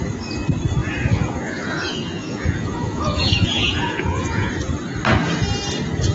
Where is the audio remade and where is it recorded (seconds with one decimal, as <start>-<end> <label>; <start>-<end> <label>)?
0.0-0.8 recorded; 0.8-4.5 remade; 4.5-6.1 recorded